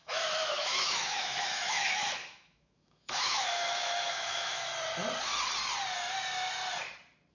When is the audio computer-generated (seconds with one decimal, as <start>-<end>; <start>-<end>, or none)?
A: 0.0-4.7